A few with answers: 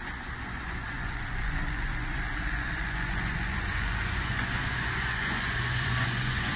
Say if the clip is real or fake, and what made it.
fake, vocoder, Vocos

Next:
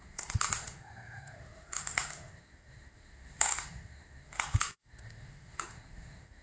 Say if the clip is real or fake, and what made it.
fake, autoencoder, DAC-VAE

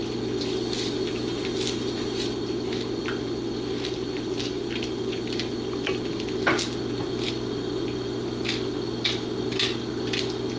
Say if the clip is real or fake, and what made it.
real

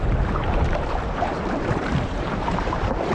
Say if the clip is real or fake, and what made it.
fake, vocoder, BigVGAN v2